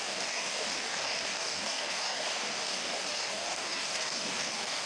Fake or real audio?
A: fake